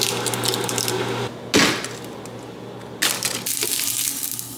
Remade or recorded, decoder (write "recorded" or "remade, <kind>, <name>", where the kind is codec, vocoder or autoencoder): recorded